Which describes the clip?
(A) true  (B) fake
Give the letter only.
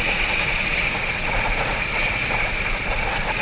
B